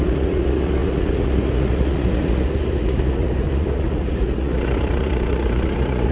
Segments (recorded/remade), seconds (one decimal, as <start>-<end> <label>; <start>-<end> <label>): 0.0-6.1 remade